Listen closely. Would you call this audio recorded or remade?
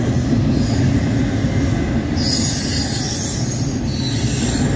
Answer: recorded